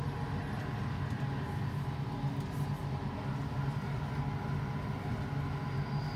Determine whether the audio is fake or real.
real